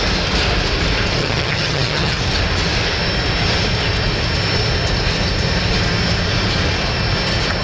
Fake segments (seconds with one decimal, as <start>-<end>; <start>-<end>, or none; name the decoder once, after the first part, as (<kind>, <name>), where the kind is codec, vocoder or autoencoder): 1.2-2.2 (vocoder, HiFi-GAN)

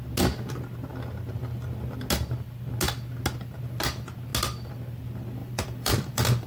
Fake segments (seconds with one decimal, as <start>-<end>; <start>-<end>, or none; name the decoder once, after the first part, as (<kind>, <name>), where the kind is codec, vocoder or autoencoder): 5.4-6.5 (vocoder, BigVGAN v2)

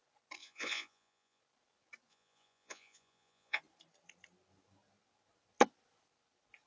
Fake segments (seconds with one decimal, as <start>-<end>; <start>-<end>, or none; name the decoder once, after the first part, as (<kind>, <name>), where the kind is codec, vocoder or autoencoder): 0.4-1.4 (vocoder, Vocos); 2.1-3.6

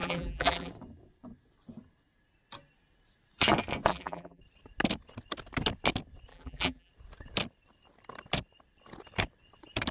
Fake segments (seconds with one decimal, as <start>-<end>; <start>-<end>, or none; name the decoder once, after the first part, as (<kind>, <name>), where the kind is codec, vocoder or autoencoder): 0.0-0.7 (vocoder, BigVGAN v2); 3.9-4.4; 6.3-6.9

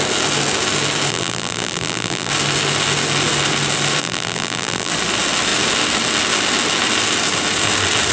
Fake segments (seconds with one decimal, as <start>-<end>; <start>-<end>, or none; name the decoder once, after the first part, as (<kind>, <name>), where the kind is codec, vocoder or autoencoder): 1.1-2.3 (vocoder, BigVGAN v2); 4.0-4.9

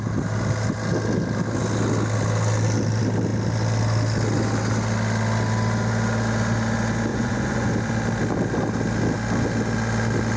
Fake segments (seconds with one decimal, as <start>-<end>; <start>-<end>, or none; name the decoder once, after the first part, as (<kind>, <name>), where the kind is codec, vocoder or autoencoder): 7.1-7.7 (vocoder, Vocos)

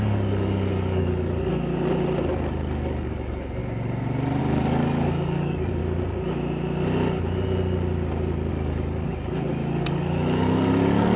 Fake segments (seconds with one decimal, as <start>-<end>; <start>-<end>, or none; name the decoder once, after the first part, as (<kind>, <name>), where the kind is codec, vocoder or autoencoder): 0.0-1.7 (codec, DAC); 2.5-3.6; 4.4-5.8; 8.5-11.2